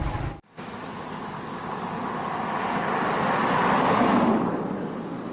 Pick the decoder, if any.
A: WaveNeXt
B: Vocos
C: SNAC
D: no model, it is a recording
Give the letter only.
D